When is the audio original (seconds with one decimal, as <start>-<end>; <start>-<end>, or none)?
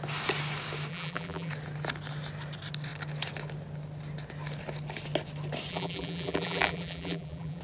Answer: 0.0-0.9; 1.5-5.7